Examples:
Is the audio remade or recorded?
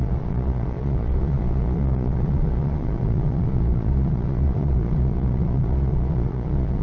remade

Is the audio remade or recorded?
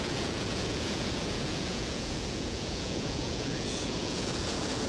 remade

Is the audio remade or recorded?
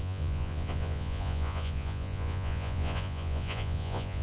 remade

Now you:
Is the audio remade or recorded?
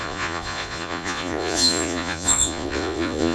remade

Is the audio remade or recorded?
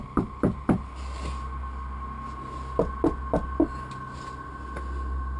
recorded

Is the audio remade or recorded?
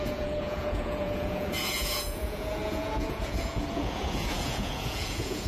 remade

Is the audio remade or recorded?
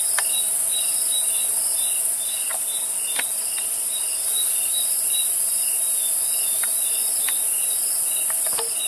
recorded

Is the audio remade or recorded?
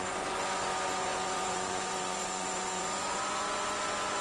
remade